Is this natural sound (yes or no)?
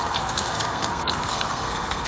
no